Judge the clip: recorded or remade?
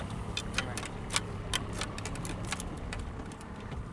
recorded